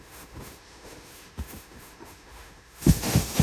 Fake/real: fake